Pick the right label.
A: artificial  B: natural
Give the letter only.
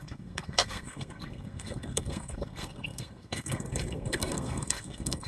A